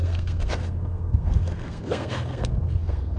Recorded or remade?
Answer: remade